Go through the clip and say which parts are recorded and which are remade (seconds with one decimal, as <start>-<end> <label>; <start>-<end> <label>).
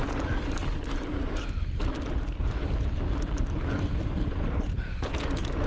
0.0-4.0 recorded; 4.0-4.6 remade; 4.6-5.7 recorded